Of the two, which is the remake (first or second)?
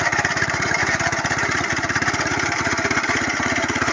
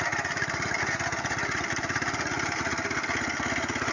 first